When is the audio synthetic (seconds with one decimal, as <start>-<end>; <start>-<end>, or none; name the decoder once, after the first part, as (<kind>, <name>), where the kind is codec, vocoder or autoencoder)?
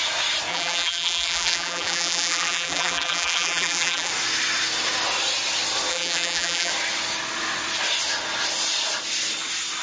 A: 0.5-4.1 (vocoder, BigVGAN v2); 5.9-6.7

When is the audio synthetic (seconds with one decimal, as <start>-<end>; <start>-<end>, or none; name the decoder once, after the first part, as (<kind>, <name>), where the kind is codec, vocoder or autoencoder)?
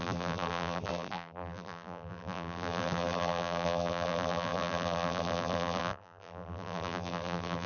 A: 0.0-7.7 (vocoder, BigVGAN v2)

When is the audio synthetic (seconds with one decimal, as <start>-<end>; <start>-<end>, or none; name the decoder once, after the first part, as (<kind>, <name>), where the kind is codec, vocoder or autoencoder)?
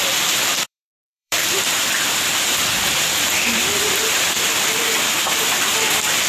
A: 0.0-3.3 (vocoder, BigVGAN v2)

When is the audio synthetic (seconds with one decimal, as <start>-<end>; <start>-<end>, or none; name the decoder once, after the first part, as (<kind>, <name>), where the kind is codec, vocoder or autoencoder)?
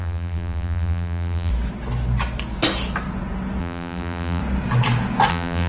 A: 0.0-1.5 (vocoder, BigVGAN v2); 3.6-4.4; 5.3-5.7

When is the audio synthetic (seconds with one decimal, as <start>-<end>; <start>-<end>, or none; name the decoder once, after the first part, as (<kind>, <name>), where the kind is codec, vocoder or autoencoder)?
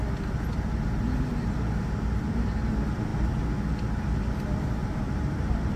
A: 4.8-5.8 (vocoder, BigVGAN v2)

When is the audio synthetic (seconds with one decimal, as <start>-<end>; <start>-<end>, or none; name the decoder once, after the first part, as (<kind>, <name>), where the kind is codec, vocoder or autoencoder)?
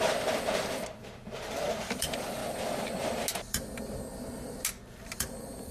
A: 0.0-2.4 (vocoder, BigVGAN v2); 4.8-5.7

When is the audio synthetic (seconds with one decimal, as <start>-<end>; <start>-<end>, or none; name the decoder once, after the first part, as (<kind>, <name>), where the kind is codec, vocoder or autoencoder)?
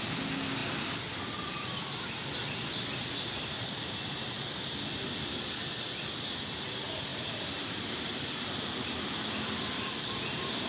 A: 3.0-3.7 (vocoder, BigVGAN v2); 7.1-10.7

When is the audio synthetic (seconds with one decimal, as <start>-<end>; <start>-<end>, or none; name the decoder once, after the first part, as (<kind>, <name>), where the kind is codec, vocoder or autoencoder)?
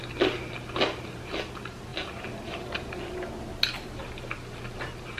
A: none